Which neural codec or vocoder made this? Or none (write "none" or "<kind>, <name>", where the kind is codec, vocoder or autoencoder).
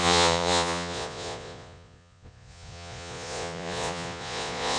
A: vocoder, Vocos